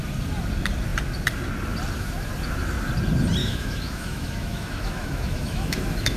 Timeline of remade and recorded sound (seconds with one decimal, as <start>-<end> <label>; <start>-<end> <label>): 0.0-3.4 recorded; 3.4-6.2 remade